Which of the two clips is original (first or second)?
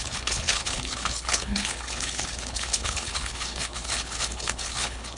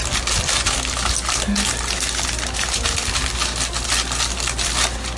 second